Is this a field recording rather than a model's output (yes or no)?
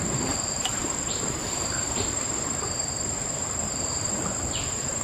no